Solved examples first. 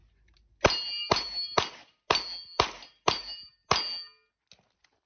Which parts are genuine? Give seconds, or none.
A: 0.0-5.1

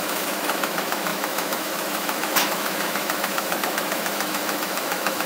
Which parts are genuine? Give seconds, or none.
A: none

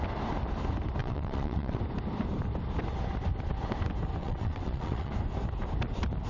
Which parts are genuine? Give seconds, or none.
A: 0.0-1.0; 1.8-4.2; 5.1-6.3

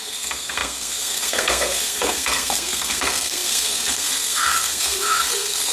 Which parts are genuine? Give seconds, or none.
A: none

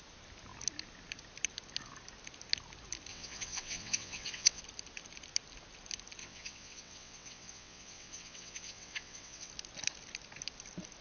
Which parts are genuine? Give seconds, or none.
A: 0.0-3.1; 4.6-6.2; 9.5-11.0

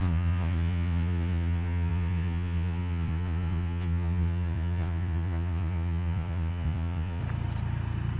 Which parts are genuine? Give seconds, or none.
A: 7.2-8.2

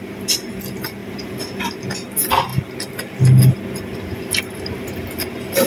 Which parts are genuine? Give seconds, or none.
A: 0.0-5.7

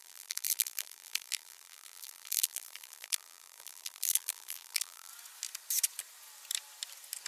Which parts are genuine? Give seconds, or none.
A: 5.1-7.3